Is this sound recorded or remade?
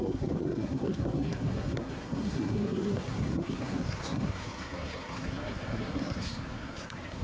remade